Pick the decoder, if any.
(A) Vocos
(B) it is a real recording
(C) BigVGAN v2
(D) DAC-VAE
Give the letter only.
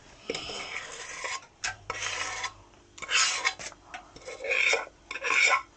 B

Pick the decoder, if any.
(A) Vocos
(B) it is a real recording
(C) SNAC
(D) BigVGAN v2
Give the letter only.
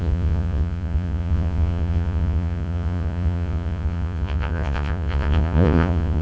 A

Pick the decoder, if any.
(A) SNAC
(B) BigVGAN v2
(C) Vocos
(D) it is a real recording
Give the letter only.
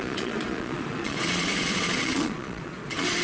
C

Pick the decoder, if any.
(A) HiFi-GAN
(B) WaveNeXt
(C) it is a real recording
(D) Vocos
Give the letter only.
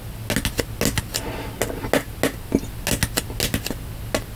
C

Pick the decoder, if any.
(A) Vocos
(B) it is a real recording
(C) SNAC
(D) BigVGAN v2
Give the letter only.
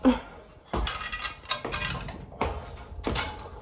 B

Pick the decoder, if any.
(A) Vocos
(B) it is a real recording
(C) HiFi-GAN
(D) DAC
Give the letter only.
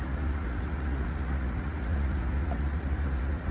A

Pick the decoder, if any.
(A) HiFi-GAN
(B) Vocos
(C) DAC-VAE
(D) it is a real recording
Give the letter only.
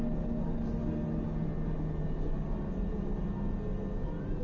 D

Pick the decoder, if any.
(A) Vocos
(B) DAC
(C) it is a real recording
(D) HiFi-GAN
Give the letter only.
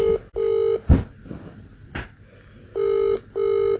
C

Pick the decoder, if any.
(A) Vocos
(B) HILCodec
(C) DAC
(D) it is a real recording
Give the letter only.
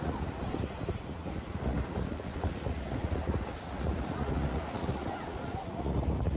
A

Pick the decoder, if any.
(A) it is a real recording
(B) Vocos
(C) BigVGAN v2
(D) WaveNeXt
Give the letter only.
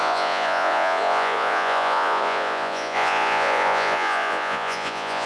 B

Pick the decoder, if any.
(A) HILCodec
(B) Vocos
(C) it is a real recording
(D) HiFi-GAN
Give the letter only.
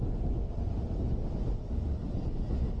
C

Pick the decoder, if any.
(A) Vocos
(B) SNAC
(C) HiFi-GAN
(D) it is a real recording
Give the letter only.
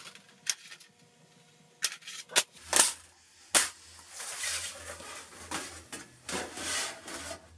D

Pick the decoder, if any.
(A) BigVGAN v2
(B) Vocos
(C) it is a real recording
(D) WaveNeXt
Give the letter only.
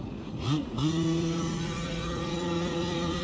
B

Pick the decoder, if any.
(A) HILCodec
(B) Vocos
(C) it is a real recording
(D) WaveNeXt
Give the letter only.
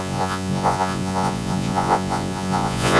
B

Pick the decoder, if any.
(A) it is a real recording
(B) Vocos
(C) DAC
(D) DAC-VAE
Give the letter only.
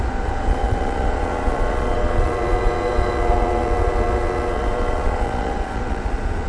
B